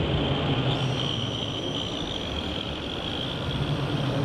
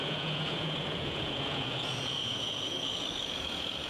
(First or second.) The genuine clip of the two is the first